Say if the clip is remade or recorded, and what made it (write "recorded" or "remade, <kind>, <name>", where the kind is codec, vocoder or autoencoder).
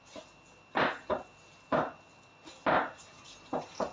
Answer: recorded